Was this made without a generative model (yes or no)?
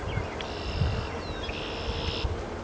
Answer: yes